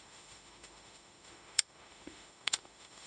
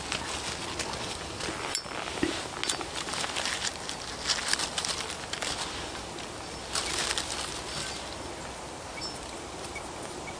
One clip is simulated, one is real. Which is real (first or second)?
second